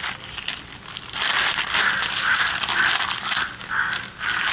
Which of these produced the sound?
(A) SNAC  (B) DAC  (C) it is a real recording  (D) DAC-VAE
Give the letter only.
C